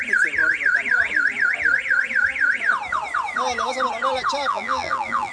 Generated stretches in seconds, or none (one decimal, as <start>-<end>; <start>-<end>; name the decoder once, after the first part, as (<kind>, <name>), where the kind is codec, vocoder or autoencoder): 4.5-5.3 (vocoder, BigVGAN v2)